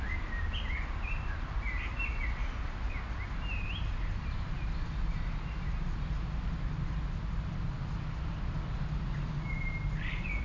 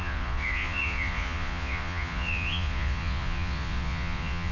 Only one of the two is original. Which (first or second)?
first